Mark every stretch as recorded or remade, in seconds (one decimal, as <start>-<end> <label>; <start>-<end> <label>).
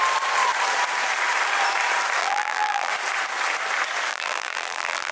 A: 0.0-2.2 recorded; 2.2-2.9 remade; 2.9-4.1 recorded; 4.1-5.1 remade